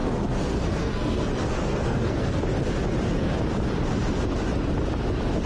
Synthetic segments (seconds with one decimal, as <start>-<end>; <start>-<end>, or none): 0.0-2.4